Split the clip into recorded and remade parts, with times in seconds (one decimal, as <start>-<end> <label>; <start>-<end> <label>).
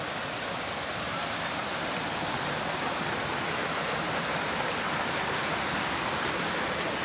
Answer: 0.0-7.0 recorded